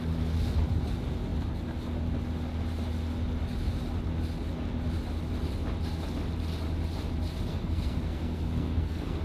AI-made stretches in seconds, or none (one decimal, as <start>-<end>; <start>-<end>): 7.5-9.2